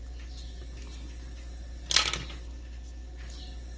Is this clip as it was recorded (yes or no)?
yes